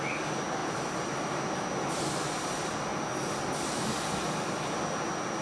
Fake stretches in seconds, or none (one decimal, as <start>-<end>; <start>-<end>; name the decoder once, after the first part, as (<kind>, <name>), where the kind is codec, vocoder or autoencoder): none